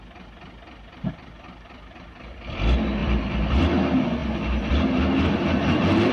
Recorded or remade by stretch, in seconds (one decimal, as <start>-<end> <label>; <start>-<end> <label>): 0.0-3.0 recorded; 3.0-3.6 remade; 3.6-6.1 recorded